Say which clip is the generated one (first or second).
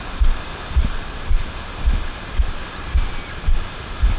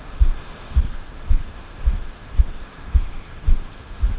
second